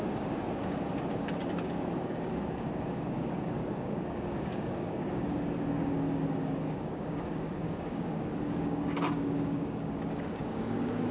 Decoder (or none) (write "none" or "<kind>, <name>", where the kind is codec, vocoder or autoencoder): codec, DAC